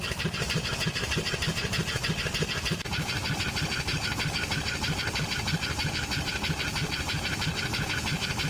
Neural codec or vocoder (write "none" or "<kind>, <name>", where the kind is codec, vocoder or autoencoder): none